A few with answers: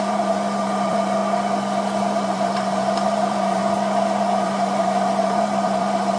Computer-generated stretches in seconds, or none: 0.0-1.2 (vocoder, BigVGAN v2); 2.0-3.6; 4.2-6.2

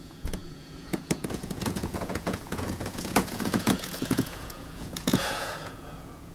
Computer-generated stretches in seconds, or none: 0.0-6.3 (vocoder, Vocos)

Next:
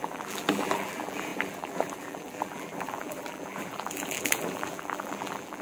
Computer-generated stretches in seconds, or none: 0.0-5.6 (vocoder, BigVGAN v2)

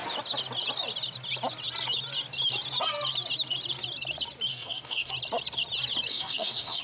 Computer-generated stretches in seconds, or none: 4.5-5.1 (codec, DAC); 6.1-6.8